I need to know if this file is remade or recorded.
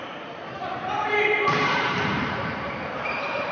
remade